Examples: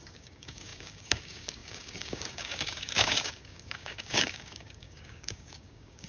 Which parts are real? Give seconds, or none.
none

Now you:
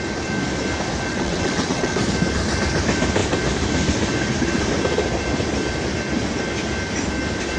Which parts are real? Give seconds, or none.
0.0-1.1; 2.0-7.6

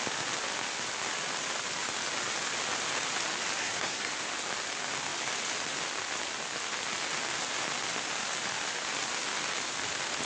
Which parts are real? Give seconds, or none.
0.0-3.6; 4.1-10.3

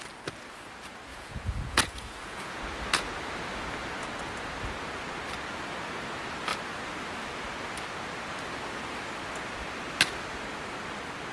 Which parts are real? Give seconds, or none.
0.0-1.1; 2.6-11.3

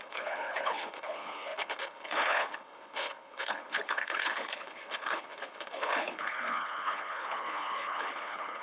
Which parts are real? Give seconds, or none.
none